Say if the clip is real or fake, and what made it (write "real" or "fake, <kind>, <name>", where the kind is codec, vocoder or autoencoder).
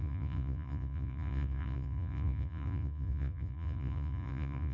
fake, vocoder, Vocos